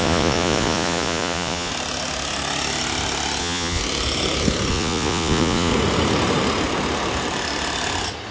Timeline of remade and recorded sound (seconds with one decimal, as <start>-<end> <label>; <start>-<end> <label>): 0.0-1.7 remade; 1.7-3.4 recorded; 3.4-3.8 remade; 3.8-4.7 recorded; 4.7-5.7 remade; 5.7-8.3 recorded